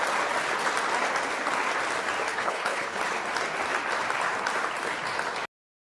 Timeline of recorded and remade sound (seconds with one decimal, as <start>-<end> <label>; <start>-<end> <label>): 0.0-2.3 recorded; 2.3-3.0 remade; 3.0-5.9 recorded